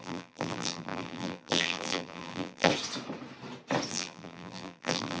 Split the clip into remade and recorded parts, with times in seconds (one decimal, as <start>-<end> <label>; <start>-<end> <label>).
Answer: 0.0-2.7 remade; 2.7-3.9 recorded; 3.9-5.2 remade